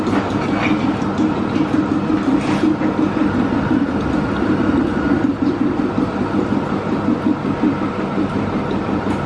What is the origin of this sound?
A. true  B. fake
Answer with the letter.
A